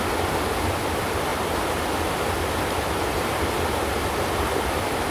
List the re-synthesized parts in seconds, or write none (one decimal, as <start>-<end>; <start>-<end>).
none